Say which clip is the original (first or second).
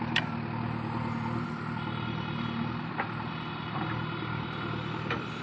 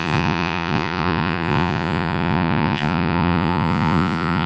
first